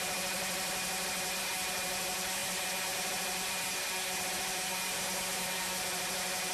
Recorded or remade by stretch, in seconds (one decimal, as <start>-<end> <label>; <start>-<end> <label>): 0.0-6.5 remade